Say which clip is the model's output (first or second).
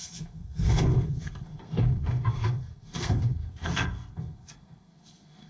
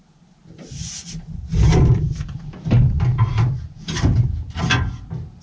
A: first